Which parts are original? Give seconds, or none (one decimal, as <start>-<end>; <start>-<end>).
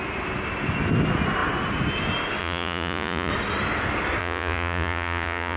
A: 0.0-2.4; 3.3-4.2